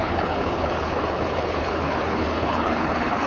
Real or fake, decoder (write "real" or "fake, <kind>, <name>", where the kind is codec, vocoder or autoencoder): fake, codec, HILCodec